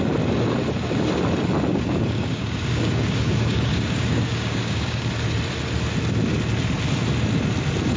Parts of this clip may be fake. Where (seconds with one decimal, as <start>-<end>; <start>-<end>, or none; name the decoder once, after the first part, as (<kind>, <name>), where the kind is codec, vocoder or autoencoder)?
1.7-5.1 (codec, DAC)